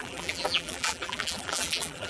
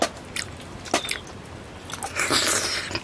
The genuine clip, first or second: second